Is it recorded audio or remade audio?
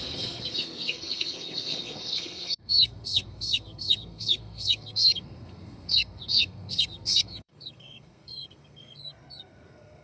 remade